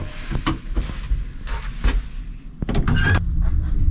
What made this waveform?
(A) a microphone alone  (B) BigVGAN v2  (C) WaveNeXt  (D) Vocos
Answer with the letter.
A